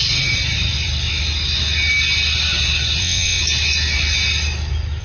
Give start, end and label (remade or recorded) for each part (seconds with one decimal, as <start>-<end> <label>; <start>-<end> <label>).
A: 0.0-3.0 recorded; 3.0-3.4 remade; 3.4-5.0 recorded